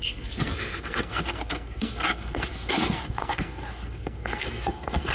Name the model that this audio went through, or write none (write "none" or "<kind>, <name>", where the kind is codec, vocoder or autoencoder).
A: codec, SNAC